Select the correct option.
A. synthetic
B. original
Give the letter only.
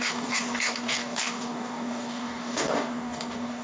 A